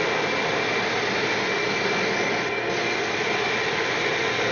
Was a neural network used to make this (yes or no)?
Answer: no